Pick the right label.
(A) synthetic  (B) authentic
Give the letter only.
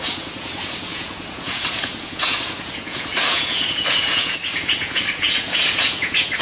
A